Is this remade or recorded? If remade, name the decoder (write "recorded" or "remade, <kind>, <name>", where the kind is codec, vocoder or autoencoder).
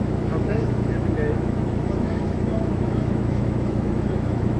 remade, autoencoder, DAC-VAE